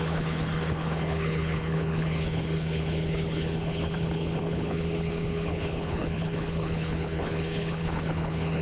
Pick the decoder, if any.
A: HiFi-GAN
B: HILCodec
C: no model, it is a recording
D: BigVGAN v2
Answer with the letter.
B